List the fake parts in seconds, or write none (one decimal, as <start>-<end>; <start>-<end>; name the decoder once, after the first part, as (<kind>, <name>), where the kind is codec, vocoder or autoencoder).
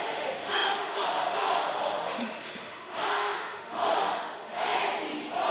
0.0-4.8 (autoencoder, DAC-VAE)